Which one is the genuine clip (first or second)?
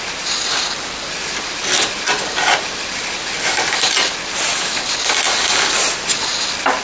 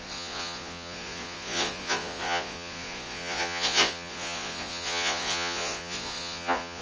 first